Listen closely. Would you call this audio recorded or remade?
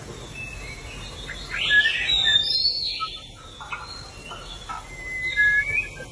recorded